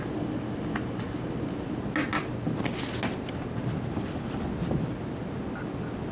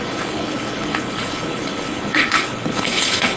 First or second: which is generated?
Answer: second